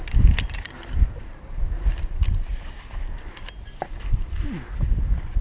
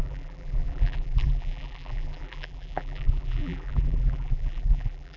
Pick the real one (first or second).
first